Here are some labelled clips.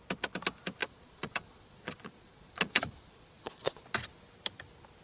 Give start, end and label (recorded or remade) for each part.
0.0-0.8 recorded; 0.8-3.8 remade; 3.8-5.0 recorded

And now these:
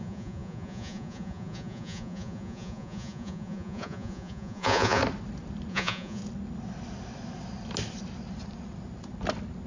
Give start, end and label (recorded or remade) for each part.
0.0-5.0 remade; 5.0-5.7 recorded; 5.7-6.2 remade; 6.2-9.7 recorded

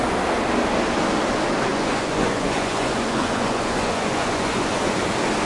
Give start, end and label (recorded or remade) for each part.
0.0-1.7 recorded; 1.7-5.0 remade; 5.0-5.5 recorded

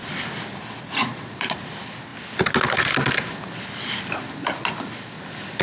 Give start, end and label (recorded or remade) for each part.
0.0-1.0 recorded; 1.0-1.6 remade; 1.6-5.6 recorded

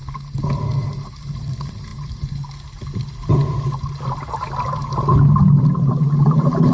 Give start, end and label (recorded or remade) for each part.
0.0-6.7 recorded